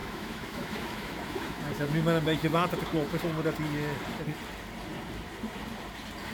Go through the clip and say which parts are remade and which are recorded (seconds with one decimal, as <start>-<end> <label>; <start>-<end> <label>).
0.0-3.2 remade; 3.2-6.3 recorded